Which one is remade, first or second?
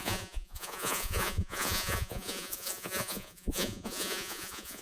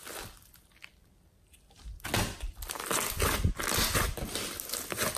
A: first